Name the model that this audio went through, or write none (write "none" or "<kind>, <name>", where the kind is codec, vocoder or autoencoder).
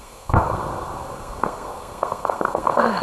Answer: codec, SNAC